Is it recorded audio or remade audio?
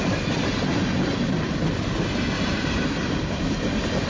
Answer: recorded